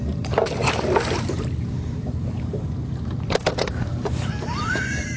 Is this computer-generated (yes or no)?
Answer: yes